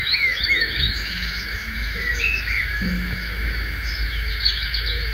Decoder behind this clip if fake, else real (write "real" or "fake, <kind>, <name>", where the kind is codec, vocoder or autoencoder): fake, autoencoder, DAC-VAE